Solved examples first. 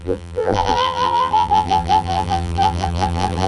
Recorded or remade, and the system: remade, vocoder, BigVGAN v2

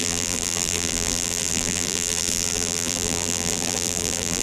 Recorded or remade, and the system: remade, vocoder, BigVGAN v2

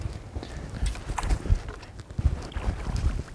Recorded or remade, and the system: recorded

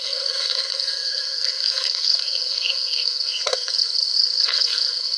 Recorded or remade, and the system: remade, codec, SNAC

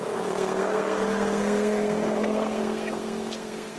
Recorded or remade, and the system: remade, codec, SNAC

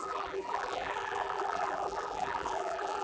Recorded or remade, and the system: remade, vocoder, BigVGAN v2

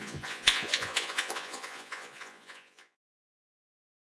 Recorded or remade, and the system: remade, vocoder, Vocos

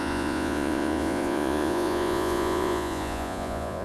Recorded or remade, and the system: remade, vocoder, Vocos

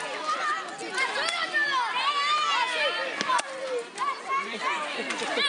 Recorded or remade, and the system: recorded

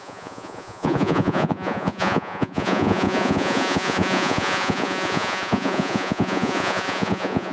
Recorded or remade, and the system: remade, vocoder, Vocos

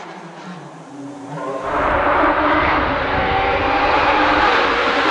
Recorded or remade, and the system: remade, vocoder, BigVGAN v2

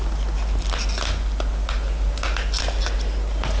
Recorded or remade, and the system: recorded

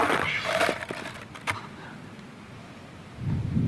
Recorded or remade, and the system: recorded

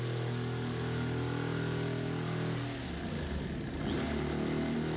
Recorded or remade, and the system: recorded